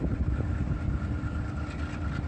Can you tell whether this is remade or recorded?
recorded